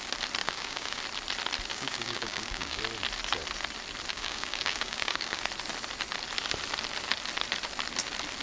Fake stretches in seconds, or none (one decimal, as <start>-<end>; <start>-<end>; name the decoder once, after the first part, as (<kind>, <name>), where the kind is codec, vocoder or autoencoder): 0.4-1.0 (codec, DAC); 1.7-2.8; 4.1-5.4

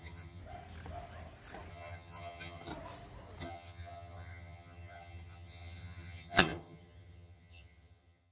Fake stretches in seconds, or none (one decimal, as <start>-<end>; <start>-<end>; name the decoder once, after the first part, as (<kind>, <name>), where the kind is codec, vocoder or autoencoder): 0.0-0.4 (vocoder, HiFi-GAN); 1.7-2.7; 3.4-8.3